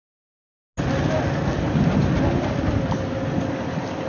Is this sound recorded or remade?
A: recorded